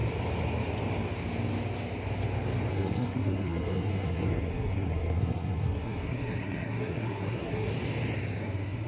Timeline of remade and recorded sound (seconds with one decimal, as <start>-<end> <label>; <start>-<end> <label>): 0.0-2.7 recorded; 2.7-7.7 remade; 7.7-8.4 recorded; 8.4-8.9 remade